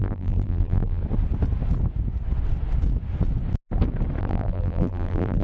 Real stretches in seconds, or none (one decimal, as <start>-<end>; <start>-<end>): 1.0-4.2